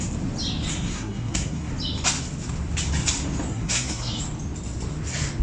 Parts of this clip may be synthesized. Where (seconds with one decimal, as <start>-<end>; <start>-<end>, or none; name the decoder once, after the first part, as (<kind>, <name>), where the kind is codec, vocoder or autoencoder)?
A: 0.7-1.7 (codec, SNAC); 3.5-4.2